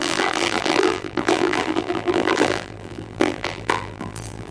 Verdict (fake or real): fake